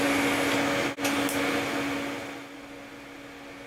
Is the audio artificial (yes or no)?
no